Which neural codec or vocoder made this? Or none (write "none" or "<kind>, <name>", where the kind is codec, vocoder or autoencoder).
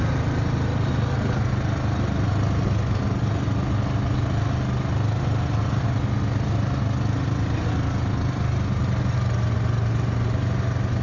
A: none